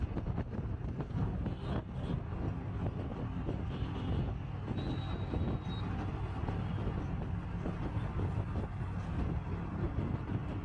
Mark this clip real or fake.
real